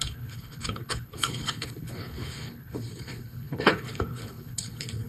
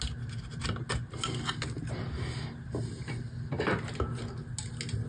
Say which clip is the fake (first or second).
first